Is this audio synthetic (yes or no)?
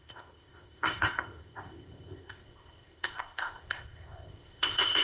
yes